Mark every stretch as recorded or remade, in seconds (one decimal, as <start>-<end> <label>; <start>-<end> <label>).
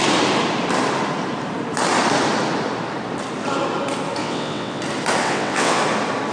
0.0-4.2 recorded; 4.2-4.8 remade; 4.8-5.2 recorded; 5.2-5.8 remade; 5.8-6.3 recorded